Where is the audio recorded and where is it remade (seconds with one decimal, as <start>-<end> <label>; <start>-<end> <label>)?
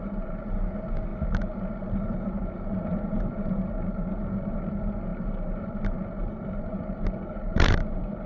0.0-8.3 remade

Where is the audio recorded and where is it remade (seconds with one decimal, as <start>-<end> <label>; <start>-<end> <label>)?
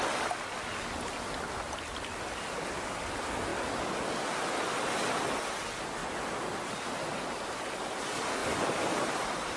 0.0-6.0 recorded; 6.0-6.6 remade; 6.6-8.4 recorded; 8.4-9.6 remade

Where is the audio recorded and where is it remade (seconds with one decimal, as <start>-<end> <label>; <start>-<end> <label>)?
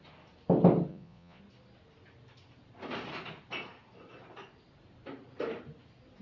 0.0-0.9 recorded; 0.9-1.4 remade; 1.4-6.2 recorded